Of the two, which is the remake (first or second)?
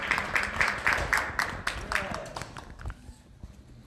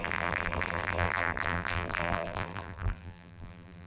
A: second